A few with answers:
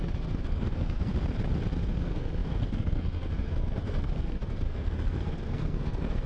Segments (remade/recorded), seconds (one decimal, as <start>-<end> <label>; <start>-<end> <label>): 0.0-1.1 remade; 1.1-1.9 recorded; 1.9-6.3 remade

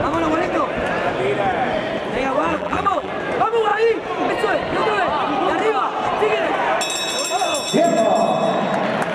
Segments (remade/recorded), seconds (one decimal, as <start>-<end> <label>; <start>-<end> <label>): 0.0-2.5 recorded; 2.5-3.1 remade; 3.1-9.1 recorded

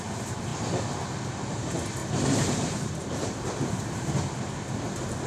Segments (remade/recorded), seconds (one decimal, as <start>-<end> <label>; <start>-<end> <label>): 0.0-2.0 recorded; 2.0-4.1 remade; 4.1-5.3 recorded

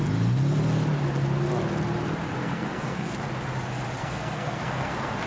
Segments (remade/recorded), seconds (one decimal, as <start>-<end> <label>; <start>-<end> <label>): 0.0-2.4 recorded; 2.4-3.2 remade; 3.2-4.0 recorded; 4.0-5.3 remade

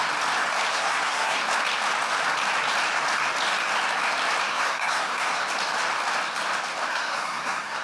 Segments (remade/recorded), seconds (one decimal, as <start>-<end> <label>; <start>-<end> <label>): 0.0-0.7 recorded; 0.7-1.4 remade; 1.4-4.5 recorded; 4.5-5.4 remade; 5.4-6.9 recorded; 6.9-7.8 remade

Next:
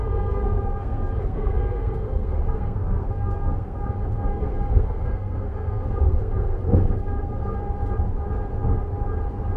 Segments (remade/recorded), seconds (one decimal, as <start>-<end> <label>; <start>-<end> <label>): 0.0-3.9 remade; 3.9-4.3 recorded; 4.3-7.6 remade; 7.6-9.6 recorded

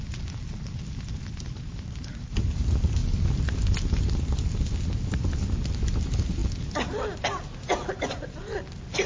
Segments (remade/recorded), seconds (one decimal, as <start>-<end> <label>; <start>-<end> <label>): 0.0-9.1 recorded